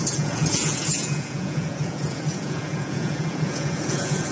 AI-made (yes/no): yes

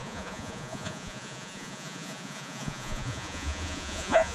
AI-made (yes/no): yes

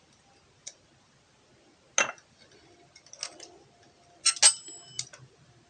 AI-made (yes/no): no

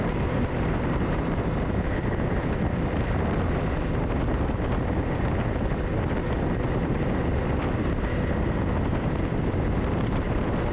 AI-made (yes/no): no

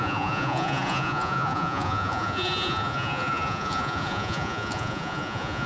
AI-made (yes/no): yes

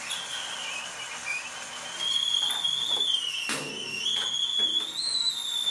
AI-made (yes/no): no